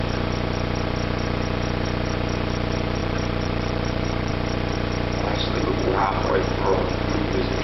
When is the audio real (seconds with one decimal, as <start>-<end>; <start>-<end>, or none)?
0.0-3.0; 4.3-6.0